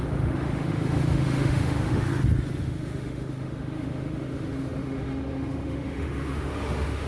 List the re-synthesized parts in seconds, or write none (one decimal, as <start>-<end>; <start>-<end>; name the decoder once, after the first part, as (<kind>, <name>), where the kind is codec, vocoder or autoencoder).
0.0-2.1 (autoencoder, DAC-VAE); 2.6-7.1